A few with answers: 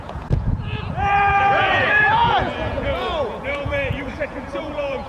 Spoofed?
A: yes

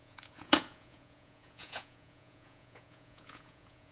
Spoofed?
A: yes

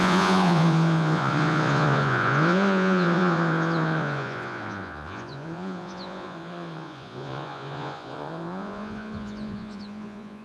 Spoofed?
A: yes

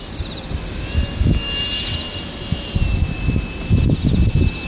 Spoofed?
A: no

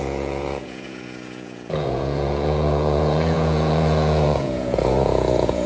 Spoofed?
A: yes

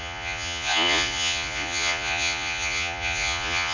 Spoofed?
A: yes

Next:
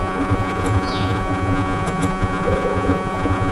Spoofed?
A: yes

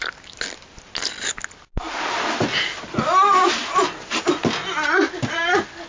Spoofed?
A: no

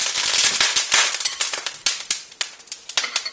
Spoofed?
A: no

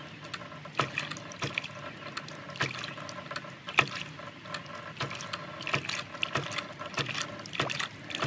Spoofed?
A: no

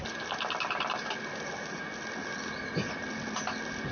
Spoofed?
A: no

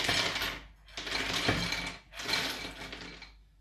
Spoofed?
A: no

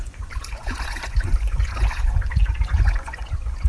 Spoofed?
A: yes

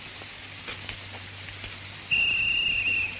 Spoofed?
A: no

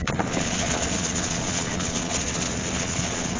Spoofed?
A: yes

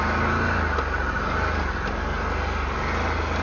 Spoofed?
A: no